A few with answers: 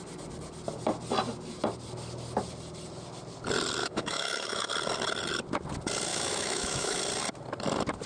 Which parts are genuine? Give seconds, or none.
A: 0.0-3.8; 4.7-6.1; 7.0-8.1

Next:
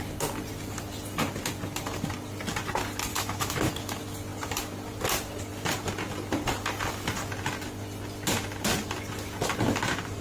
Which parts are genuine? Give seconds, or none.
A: 0.0-3.1; 3.7-10.2

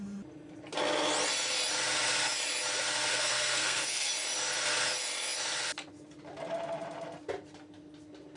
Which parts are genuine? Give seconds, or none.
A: 0.0-3.1; 4.1-8.4

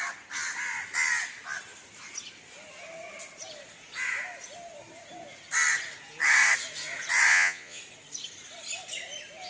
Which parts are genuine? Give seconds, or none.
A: 0.0-7.3; 7.8-9.5